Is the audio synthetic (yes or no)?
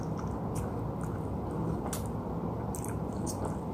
no